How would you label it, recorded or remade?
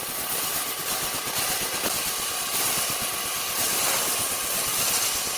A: recorded